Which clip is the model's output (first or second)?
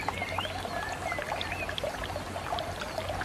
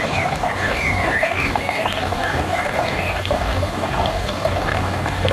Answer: second